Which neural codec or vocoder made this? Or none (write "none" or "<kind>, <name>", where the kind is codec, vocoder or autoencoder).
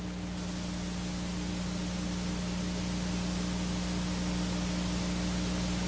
none